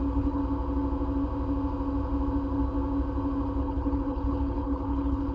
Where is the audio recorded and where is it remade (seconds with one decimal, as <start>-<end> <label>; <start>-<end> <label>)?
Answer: 0.0-0.4 remade; 0.4-3.6 recorded; 3.6-5.3 remade